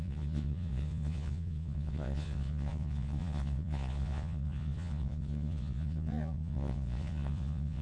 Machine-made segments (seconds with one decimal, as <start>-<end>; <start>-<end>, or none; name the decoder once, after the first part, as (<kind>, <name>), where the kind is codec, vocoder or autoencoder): 0.0-7.8 (vocoder, Vocos)